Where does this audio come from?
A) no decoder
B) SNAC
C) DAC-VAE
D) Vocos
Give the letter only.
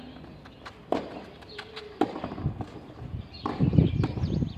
A